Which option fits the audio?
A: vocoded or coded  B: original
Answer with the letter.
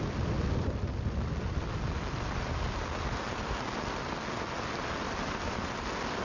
B